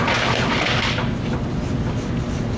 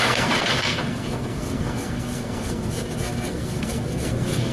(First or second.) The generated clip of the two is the second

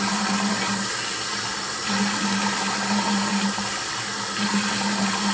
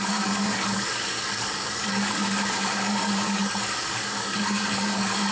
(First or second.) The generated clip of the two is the second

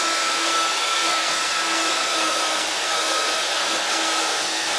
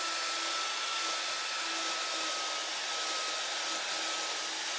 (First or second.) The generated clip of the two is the first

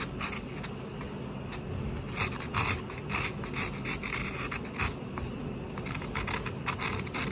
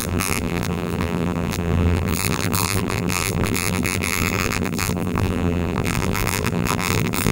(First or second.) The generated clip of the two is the second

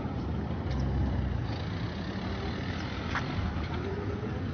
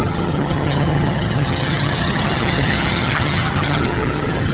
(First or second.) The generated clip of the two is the second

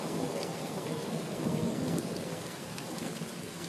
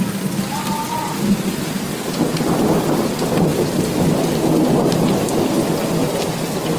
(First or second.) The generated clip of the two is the first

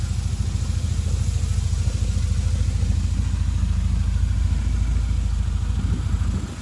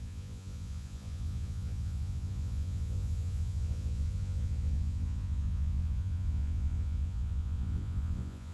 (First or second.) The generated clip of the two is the second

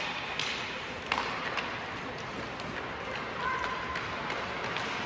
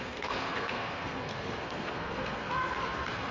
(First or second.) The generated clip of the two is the second